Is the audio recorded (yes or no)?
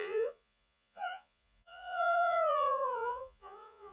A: no